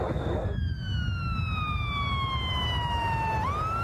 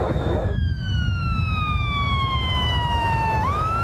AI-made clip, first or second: second